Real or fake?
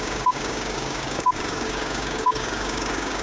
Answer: fake